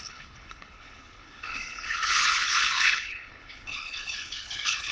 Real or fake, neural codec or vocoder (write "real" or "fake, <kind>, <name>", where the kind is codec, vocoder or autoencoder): fake, codec, HILCodec